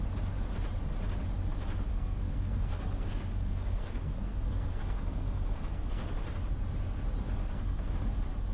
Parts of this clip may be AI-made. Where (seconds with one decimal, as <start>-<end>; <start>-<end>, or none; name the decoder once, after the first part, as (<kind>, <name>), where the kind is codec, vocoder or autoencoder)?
1.9-6.1 (codec, SNAC); 7.4-7.9